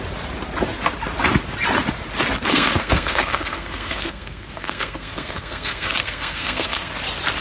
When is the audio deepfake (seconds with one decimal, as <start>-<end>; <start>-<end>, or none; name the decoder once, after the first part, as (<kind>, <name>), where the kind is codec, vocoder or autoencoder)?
2.5-6.9 (codec, SNAC)